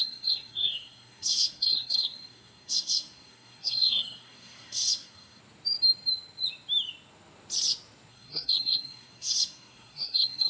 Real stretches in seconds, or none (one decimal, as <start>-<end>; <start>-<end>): 5.4-8.1